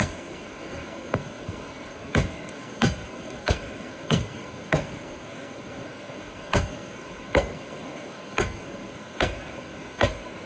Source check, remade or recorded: remade